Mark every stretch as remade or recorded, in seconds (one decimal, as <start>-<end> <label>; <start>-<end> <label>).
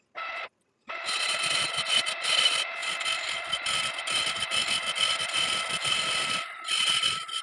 0.0-7.4 recorded